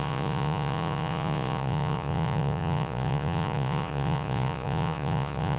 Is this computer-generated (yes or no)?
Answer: yes